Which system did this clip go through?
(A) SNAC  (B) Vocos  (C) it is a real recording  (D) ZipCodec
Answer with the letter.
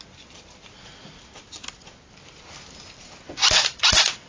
C